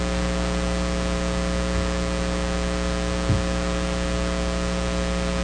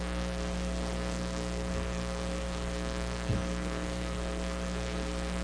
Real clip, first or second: first